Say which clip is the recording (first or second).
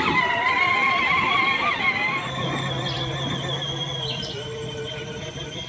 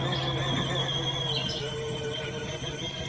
second